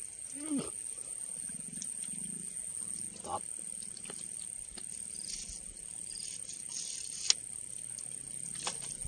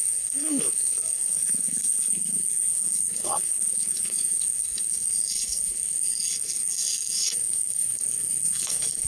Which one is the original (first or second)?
first